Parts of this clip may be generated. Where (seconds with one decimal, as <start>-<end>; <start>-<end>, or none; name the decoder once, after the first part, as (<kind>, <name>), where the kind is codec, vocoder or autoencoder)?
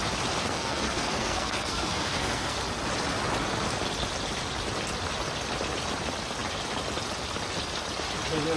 0.4-2.6 (codec, SNAC)